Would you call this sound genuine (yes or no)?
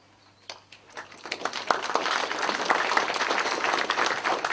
yes